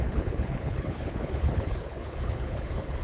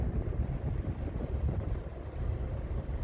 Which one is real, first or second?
second